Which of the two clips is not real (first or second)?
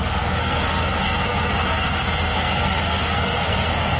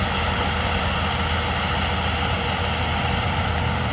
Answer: first